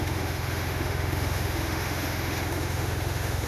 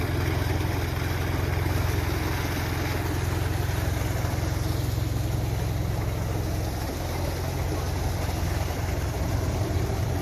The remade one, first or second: first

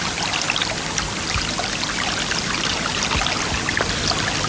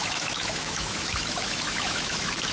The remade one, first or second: second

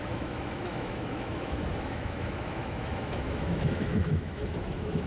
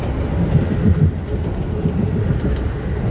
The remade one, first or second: first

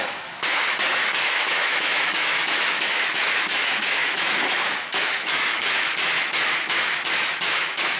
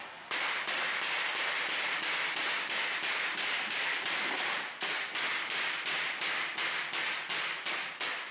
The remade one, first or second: first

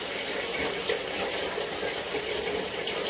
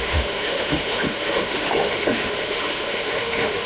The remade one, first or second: second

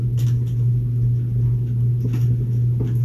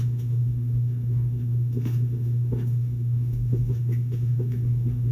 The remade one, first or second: second